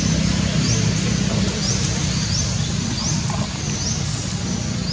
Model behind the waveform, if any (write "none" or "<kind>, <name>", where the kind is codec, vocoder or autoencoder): none